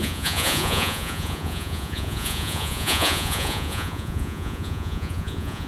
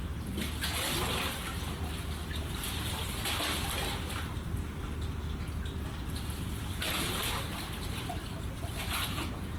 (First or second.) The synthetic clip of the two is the first